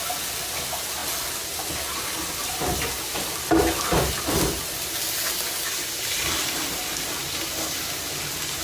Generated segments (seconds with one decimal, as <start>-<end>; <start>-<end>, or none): none